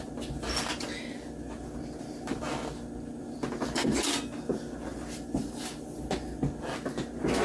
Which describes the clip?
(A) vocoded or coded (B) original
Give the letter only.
B